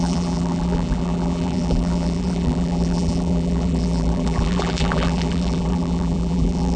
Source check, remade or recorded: remade